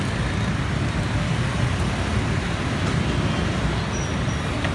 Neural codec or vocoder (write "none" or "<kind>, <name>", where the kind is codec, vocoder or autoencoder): none